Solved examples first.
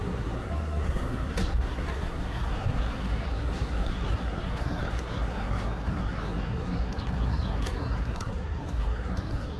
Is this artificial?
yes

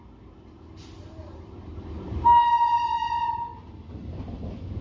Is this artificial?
no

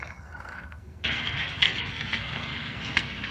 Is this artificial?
yes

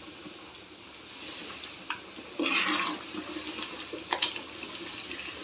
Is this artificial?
no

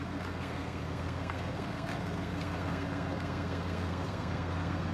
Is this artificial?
yes